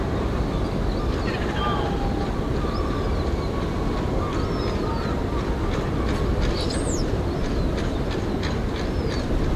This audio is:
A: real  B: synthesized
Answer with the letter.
A